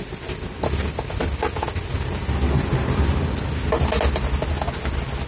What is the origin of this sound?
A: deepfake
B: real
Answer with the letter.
B